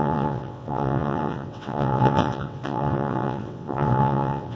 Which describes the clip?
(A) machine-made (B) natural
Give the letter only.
A